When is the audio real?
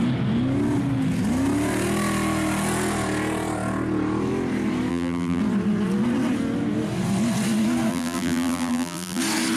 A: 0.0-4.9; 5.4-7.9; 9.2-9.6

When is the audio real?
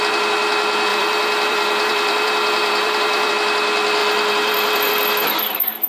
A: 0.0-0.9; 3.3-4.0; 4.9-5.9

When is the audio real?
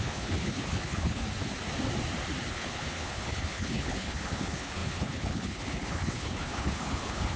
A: 1.2-2.5